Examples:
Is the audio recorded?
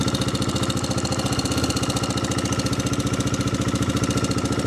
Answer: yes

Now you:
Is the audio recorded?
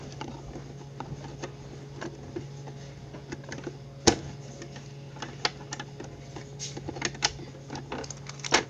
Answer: yes